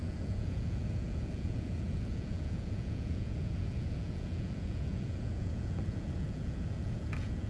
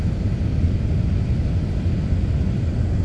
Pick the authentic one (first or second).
second